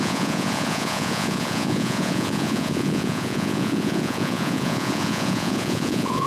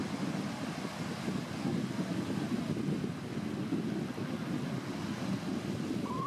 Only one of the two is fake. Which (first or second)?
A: first